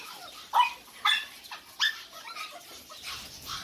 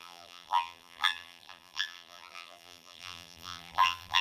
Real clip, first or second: first